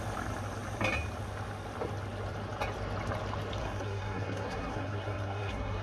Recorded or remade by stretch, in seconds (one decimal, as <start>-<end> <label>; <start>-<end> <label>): 0.0-3.6 recorded; 3.6-5.8 remade